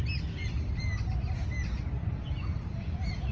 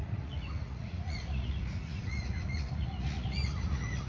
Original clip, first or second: first